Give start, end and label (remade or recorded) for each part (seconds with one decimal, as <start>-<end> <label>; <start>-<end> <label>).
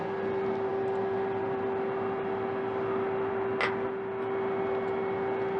0.0-0.7 recorded; 0.7-3.3 remade; 3.3-5.6 recorded